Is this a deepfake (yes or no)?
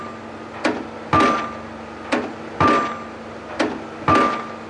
no